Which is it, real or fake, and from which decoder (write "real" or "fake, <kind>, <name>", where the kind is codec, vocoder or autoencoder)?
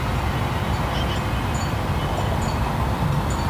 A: real